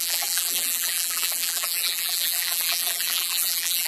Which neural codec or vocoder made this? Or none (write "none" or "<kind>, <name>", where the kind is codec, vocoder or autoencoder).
vocoder, BigVGAN v2